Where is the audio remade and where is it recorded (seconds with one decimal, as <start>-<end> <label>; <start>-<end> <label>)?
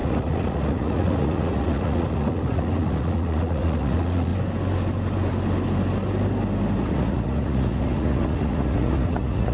0.0-4.3 remade; 4.3-6.8 recorded; 6.8-9.5 remade